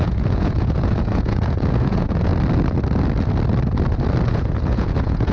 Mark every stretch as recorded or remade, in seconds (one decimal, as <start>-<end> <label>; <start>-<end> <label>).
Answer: 0.0-2.3 remade; 2.3-4.3 recorded; 4.3-5.3 remade